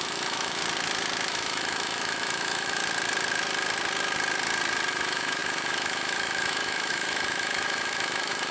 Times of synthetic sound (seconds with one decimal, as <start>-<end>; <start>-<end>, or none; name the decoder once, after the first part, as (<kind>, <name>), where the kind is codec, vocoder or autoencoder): 0.0-0.6 (autoencoder, DAC-VAE); 1.3-2.8; 4.9-8.5